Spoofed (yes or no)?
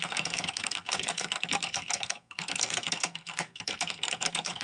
yes